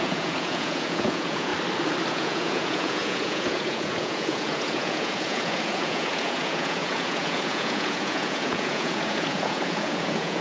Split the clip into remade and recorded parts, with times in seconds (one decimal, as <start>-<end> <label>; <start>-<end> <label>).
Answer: 0.0-1.5 remade; 1.5-2.1 recorded; 2.1-10.4 remade